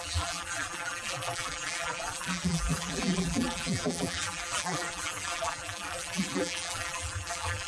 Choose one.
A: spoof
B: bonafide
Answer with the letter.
A